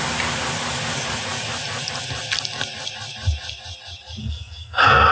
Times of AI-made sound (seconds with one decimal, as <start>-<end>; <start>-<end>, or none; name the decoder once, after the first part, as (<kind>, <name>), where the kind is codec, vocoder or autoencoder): 4.2-5.1 (codec, SNAC)